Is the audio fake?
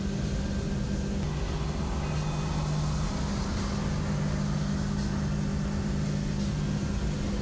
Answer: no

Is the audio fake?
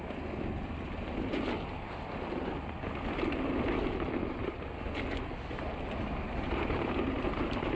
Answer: no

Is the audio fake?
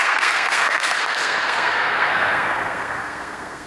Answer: yes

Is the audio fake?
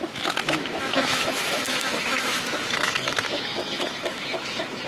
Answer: yes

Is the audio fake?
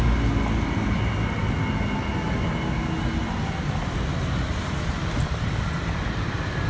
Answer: no